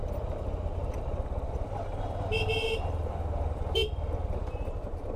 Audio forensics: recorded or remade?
recorded